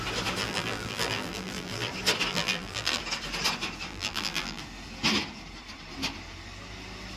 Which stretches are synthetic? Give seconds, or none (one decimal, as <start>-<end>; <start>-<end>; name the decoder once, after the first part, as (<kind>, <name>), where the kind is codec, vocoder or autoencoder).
0.4-1.9 (vocoder, BigVGAN v2); 2.3-3.0; 3.9-4.6